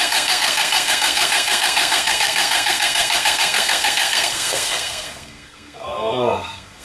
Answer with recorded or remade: remade